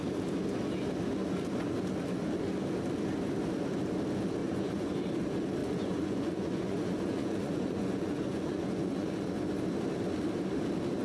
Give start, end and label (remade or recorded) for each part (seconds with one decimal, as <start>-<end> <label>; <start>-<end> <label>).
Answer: 0.0-4.4 recorded; 4.4-5.1 remade; 5.1-5.6 recorded; 5.6-9.5 remade; 9.5-11.0 recorded